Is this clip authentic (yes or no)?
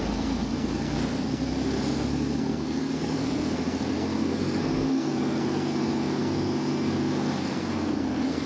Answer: no